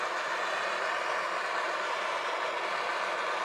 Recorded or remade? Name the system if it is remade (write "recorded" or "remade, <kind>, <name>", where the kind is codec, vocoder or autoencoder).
recorded